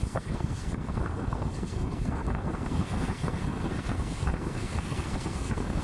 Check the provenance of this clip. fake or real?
fake